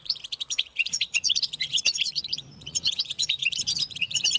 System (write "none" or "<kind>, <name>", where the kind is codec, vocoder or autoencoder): vocoder, Vocos